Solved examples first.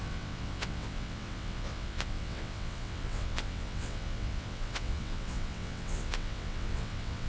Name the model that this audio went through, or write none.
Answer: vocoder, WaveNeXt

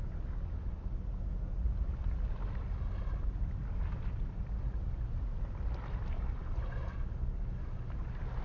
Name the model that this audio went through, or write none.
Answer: none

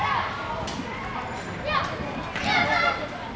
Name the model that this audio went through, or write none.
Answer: none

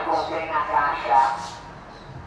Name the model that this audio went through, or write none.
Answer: none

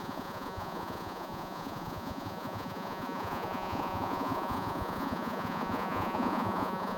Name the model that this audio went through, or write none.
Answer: vocoder, Vocos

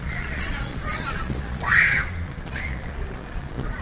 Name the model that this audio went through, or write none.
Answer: vocoder, Vocos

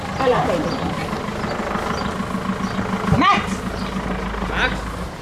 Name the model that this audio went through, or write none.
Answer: none